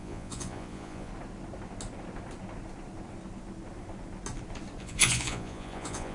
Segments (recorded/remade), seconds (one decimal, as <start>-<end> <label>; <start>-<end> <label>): 0.0-1.1 remade; 1.1-4.8 recorded; 4.8-6.1 remade